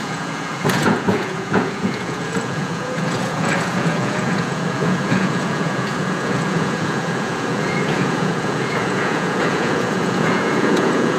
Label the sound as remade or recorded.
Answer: remade